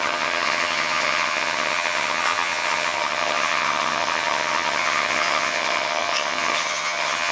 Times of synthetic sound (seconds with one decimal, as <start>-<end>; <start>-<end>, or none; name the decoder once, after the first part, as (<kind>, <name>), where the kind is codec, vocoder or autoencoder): 0.0-7.3 (vocoder, HiFi-GAN)